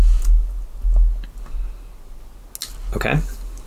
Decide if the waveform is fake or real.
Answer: real